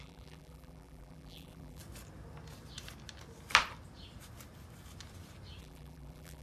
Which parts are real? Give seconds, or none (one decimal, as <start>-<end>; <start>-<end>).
1.8-5.6